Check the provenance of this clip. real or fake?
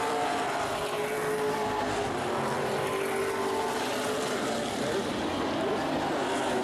real